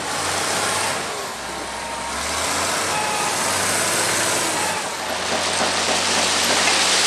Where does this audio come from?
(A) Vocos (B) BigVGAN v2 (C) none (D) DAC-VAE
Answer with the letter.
C